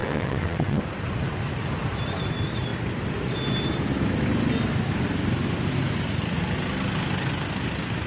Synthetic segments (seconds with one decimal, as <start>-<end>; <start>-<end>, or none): 0.0-0.8